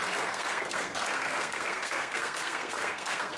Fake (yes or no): yes